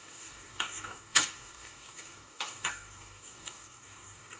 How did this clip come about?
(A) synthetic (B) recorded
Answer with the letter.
A